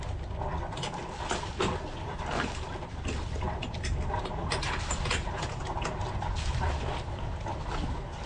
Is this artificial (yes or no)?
no